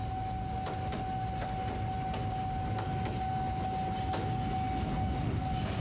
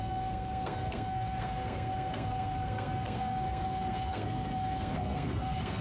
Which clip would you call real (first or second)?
first